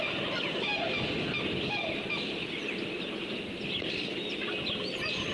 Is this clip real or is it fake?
real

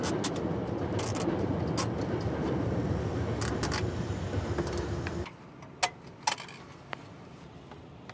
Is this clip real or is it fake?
real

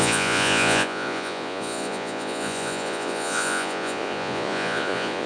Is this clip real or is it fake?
fake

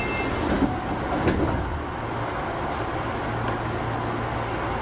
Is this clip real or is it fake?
real